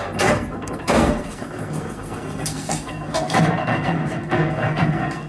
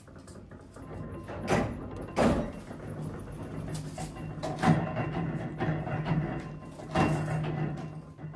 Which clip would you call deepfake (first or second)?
first